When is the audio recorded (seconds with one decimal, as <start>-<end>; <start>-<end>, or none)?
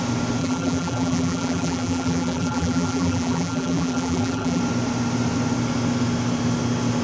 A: 0.0-0.4; 4.6-7.0